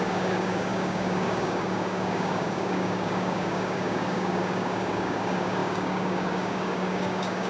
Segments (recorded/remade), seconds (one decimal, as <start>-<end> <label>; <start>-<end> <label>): 0.0-7.5 remade